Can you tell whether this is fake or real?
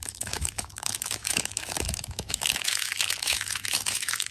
fake